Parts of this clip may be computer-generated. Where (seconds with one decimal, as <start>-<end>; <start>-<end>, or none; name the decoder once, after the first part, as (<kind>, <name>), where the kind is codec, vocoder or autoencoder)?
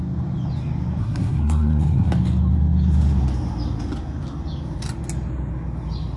1.0-2.1 (codec, SNAC)